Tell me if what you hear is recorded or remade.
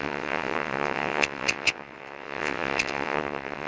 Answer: remade